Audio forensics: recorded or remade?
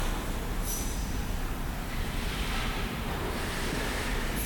remade